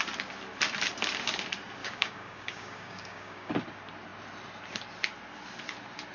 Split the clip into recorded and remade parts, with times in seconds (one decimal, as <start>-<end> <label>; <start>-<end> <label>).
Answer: 0.0-1.8 recorded; 1.8-3.5 remade; 3.5-6.1 recorded